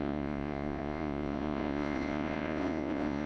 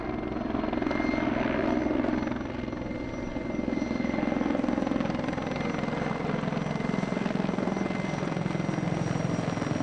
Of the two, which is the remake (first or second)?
first